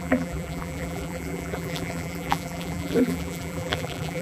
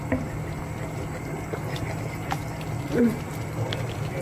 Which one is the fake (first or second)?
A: first